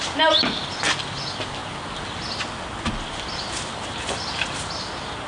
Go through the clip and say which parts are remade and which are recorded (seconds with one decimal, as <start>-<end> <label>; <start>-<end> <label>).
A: 0.0-5.3 recorded